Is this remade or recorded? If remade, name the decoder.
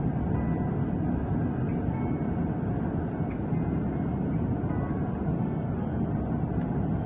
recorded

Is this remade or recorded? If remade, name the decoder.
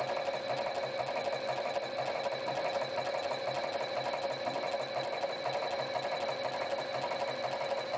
recorded